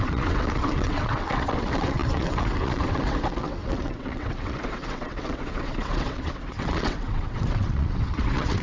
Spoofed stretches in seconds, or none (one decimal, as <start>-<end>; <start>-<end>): 0.0-8.6